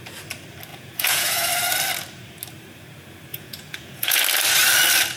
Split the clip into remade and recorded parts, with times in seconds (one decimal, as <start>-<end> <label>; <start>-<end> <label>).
0.0-0.7 recorded; 0.7-1.5 remade; 1.5-3.3 recorded; 3.3-4.2 remade; 4.2-5.2 recorded